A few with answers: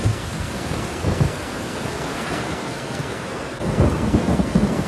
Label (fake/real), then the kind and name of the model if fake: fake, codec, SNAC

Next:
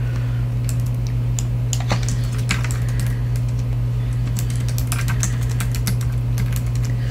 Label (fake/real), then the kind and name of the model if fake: real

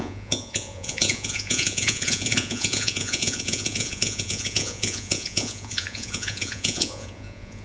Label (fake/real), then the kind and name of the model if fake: fake, vocoder, Vocos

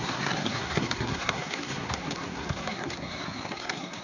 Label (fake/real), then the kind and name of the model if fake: fake, codec, SNAC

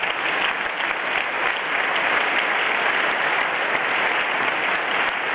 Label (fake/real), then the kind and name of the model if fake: real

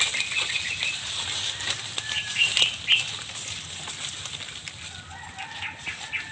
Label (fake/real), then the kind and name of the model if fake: real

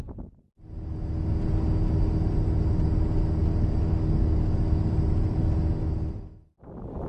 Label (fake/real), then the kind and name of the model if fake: real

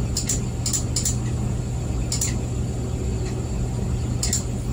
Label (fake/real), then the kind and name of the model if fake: real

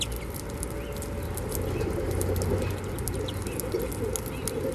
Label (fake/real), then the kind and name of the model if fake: real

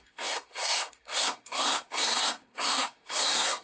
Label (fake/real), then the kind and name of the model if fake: fake, codec, SNAC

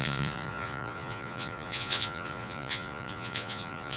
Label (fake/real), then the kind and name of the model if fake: fake, vocoder, Vocos